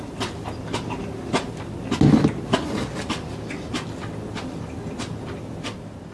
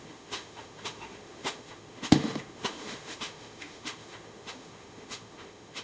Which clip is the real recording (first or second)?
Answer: first